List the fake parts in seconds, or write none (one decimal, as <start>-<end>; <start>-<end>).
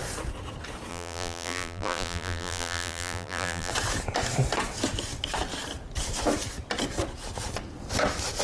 0.9-3.7